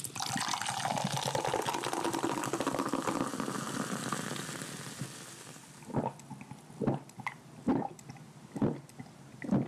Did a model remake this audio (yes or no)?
no